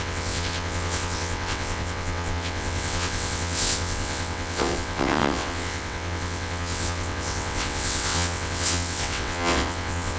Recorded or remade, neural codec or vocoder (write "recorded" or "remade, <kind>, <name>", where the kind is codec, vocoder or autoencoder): remade, vocoder, WaveNeXt